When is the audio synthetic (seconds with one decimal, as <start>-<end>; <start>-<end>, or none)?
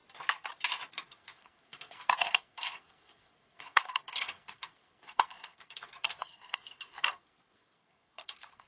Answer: 0.9-8.7